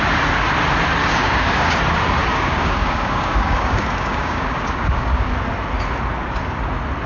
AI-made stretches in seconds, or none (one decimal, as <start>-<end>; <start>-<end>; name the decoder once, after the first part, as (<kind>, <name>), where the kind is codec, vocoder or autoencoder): 1.0-1.8 (codec, DAC); 2.3-5.3